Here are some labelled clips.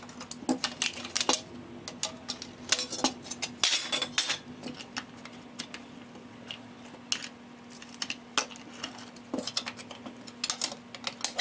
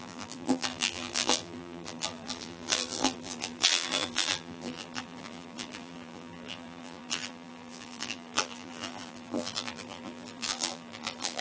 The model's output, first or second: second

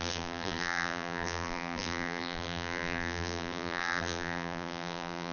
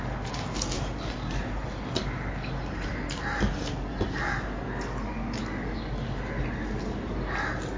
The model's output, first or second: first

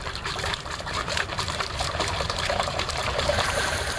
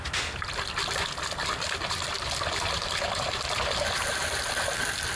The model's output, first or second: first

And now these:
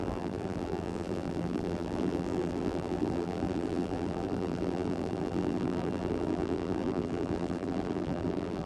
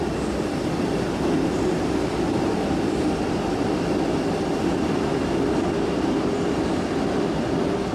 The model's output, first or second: first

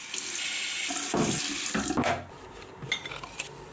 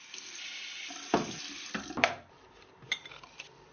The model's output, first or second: second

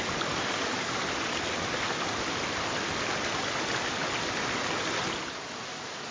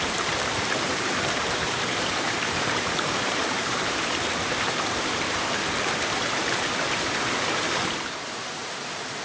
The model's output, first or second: second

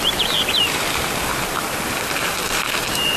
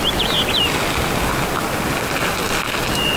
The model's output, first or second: first